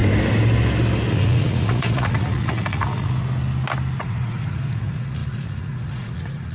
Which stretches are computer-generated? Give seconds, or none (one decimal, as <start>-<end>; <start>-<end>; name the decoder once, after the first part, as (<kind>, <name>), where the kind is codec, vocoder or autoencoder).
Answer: 1.1-3.2 (vocoder, Vocos); 4.0-6.5